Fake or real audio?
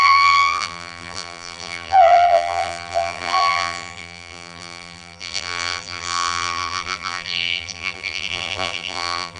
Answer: fake